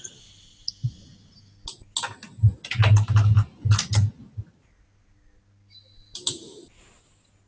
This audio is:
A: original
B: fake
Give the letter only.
A